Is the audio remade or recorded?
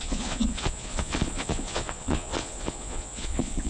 remade